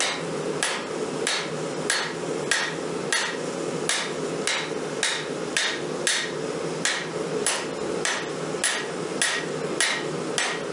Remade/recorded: recorded